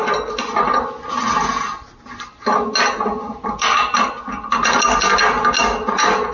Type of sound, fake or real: real